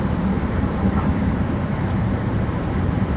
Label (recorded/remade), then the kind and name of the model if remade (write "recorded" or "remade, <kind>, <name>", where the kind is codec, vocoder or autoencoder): remade, vocoder, BigVGAN v2